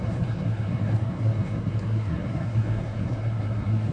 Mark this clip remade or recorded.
remade